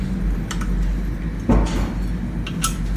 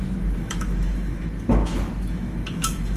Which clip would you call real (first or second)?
first